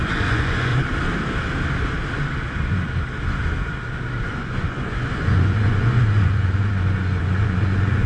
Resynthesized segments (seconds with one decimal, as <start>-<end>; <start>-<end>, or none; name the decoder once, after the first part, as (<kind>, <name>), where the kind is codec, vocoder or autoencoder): 0.0-0.7 (vocoder, Vocos); 4.2-8.1